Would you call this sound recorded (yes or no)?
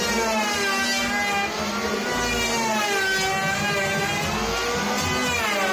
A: yes